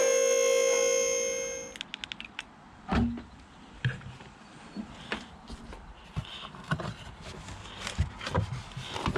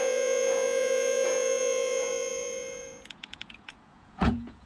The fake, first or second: second